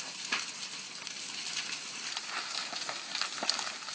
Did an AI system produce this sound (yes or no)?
no